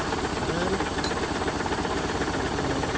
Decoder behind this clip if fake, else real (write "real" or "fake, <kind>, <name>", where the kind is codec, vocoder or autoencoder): real